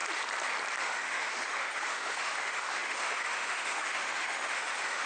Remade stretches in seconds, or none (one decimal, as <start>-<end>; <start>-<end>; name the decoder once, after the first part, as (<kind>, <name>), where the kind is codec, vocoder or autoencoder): 0.8-5.1 (autoencoder, DAC-VAE)